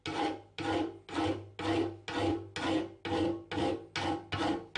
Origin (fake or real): real